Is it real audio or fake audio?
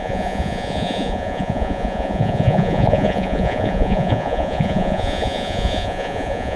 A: fake